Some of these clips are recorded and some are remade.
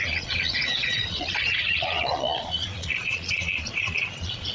remade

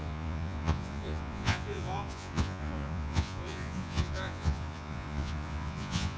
remade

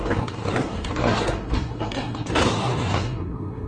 remade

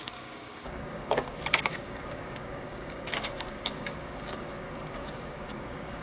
remade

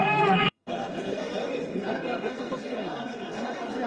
remade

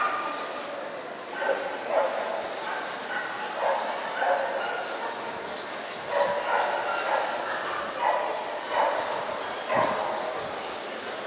recorded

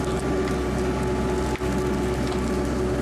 recorded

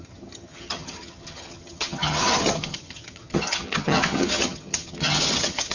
remade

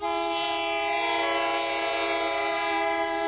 recorded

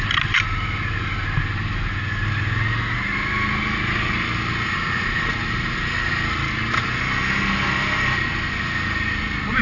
recorded